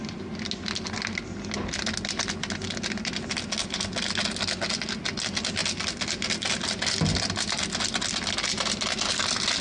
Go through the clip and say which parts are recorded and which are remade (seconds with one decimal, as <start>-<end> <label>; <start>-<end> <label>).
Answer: 0.0-9.6 recorded